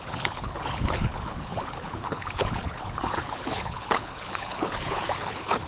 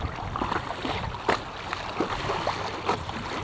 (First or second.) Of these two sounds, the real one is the second